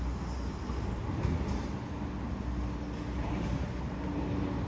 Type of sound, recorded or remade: recorded